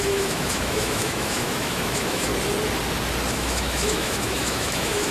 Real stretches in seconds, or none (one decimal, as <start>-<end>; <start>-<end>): 2.3-3.3